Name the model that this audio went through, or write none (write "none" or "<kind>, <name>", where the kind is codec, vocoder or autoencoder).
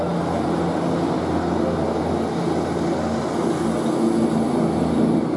none